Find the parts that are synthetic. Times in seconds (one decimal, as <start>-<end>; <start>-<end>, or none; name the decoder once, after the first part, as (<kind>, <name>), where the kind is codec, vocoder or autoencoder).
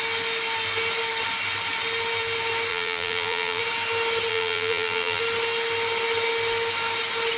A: 2.7-3.6 (vocoder, BigVGAN v2); 4.3-5.2